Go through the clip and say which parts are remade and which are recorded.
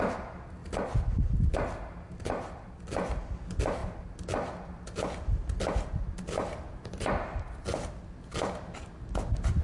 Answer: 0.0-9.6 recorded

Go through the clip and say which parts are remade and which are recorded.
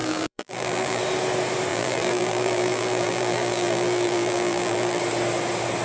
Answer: 0.0-1.0 remade; 1.0-1.7 recorded; 1.7-5.0 remade; 5.0-5.8 recorded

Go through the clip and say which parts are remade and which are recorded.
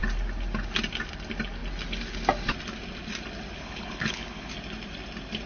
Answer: 0.0-3.6 recorded; 3.6-4.5 remade; 4.5-5.5 recorded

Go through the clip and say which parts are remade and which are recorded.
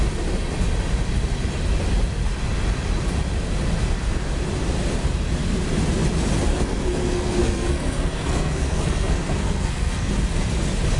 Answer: 0.0-6.5 recorded; 6.5-10.1 remade; 10.1-11.0 recorded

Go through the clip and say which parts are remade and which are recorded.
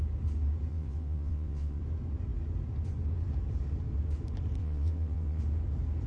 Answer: 0.0-0.7 recorded; 0.7-1.8 remade; 1.8-4.6 recorded; 4.6-5.4 remade; 5.4-6.1 recorded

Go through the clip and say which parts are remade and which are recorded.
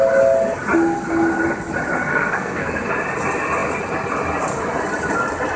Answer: 0.0-2.1 recorded; 2.1-2.9 remade; 2.9-5.6 recorded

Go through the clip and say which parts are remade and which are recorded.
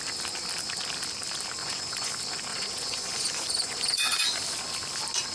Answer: 0.0-1.6 recorded; 1.6-2.1 remade; 2.1-2.5 recorded; 2.5-4.4 remade; 4.4-5.3 recorded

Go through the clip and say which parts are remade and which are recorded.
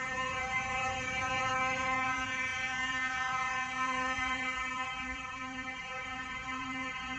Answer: 0.0-7.2 remade